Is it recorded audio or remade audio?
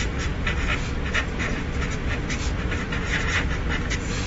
recorded